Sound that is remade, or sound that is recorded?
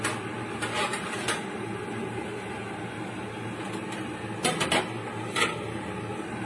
recorded